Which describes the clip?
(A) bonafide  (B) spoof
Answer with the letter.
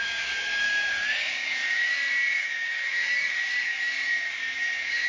B